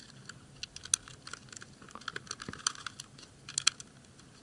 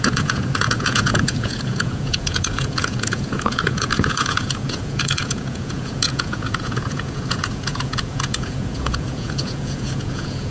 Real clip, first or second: first